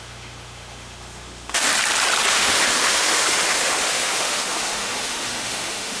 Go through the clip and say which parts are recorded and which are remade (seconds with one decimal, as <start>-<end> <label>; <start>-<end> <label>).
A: 0.0-1.7 remade; 1.7-2.3 recorded; 2.3-6.0 remade